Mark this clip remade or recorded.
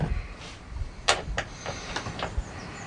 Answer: remade